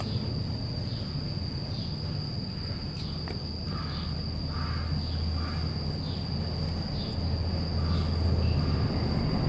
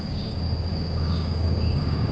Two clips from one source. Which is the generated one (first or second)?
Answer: second